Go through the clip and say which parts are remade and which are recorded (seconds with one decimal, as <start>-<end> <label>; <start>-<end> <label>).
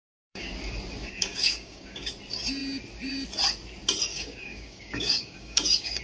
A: 0.0-0.5 remade; 0.5-1.0 recorded; 1.0-2.1 remade; 2.1-4.1 recorded; 4.1-6.0 remade